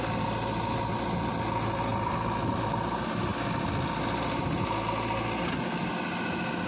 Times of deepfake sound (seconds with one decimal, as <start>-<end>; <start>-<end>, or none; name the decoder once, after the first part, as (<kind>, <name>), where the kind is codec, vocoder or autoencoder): none